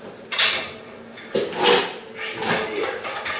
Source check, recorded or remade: recorded